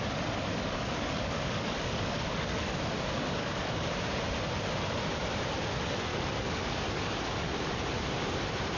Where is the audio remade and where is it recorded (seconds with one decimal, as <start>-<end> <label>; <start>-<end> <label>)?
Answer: 0.0-0.5 recorded; 0.5-3.9 remade; 3.9-6.1 recorded; 6.1-7.5 remade; 7.5-8.8 recorded